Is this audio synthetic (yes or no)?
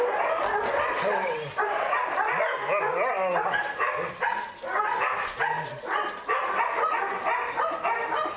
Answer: no